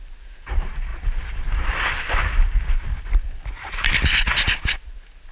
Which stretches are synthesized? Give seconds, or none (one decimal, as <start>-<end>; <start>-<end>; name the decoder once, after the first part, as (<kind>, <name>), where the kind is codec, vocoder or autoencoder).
none